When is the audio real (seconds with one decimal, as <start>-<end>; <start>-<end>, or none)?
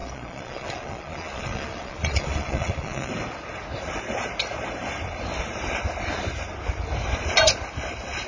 3.1-8.3